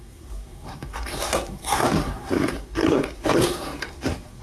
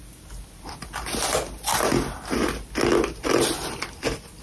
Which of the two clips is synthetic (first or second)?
first